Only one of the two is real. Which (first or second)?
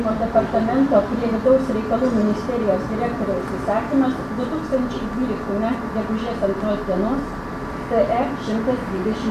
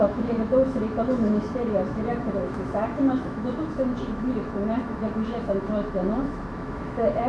first